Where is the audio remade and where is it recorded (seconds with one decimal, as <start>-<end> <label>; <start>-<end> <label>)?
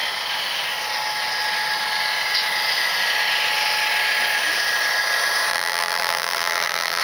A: 0.0-5.5 recorded; 5.5-7.0 remade